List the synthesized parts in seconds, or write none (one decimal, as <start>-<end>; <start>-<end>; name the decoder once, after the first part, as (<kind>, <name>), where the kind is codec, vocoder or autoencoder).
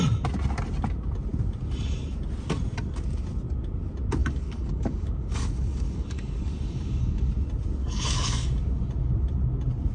4.2-7.3 (codec, DAC); 7.8-8.5